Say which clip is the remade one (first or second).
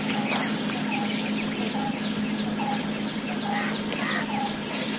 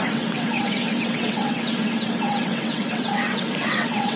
second